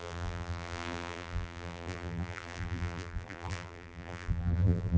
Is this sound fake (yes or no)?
yes